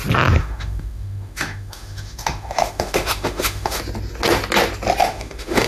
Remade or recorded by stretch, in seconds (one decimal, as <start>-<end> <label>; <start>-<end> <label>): 0.0-0.4 recorded; 0.4-3.8 remade; 3.8-5.0 recorded; 5.0-5.7 remade